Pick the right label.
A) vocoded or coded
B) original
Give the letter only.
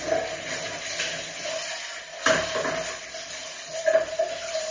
B